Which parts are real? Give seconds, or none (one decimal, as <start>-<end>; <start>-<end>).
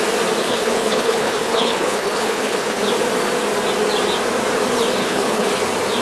0.0-0.4; 2.8-5.0; 5.5-6.0